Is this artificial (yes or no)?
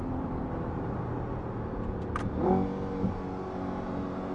no